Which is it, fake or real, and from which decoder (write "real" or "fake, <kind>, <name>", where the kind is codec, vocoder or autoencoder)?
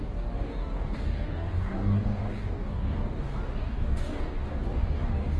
fake, codec, DAC